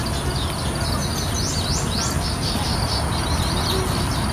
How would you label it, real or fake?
real